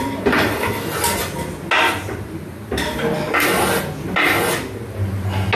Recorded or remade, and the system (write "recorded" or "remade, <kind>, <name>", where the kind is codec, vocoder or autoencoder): recorded